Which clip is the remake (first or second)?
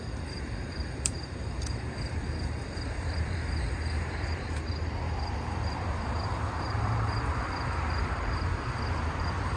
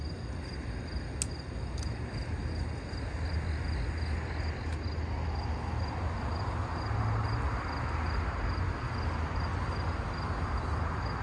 first